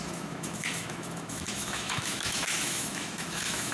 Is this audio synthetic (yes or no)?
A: yes